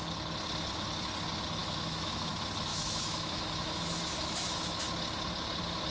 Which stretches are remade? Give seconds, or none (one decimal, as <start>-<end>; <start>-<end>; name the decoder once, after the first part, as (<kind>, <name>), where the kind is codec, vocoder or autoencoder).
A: 1.6-2.3 (autoencoder, DAC-VAE); 2.7-4.8